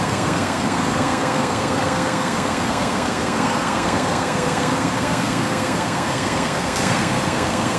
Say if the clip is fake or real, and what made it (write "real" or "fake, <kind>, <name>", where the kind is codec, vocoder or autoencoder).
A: fake, codec, SNAC